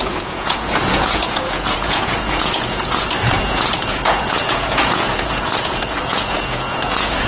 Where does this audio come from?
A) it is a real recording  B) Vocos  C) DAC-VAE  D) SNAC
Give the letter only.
B